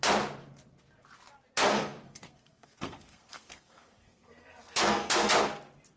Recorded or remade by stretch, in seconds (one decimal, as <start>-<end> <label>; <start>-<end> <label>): 0.0-1.7 recorded; 1.7-5.3 remade; 5.3-6.0 recorded

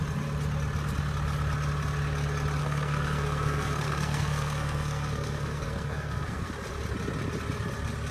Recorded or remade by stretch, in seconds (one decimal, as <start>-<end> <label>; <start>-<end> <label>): 0.0-2.6 recorded; 2.6-6.5 remade; 6.5-8.1 recorded

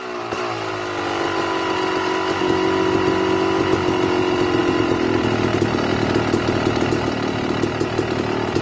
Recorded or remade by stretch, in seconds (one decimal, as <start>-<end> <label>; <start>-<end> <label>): 0.0-8.6 recorded

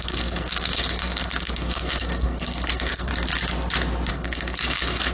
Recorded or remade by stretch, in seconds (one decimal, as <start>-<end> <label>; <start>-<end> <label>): 0.0-3.1 remade; 3.1-4.1 recorded; 4.1-5.1 remade

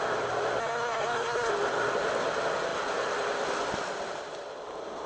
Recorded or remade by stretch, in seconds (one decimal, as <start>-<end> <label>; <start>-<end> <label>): 0.0-0.6 recorded; 0.6-1.5 remade; 1.5-5.1 recorded